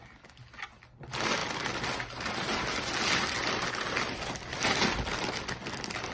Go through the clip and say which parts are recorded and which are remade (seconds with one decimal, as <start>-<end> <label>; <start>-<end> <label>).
0.0-6.1 recorded